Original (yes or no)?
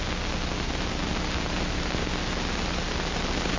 yes